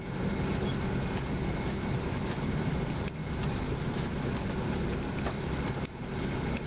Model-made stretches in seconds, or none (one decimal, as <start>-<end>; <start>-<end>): 1.4-2.7